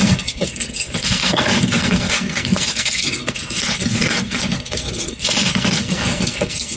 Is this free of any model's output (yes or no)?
no